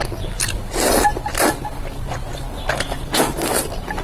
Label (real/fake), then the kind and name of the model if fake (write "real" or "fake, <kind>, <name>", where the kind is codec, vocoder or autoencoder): real